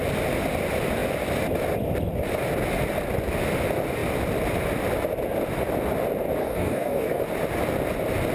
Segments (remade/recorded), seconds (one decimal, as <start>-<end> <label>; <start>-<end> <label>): 0.0-6.4 recorded; 6.4-7.2 remade; 7.2-8.3 recorded